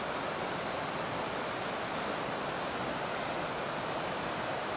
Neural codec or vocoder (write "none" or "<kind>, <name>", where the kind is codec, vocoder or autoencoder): none